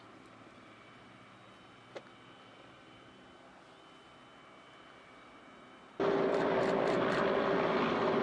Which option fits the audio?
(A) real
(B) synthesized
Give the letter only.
A